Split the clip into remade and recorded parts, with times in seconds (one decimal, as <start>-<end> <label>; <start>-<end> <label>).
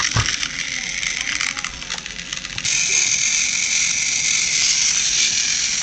0.0-5.8 recorded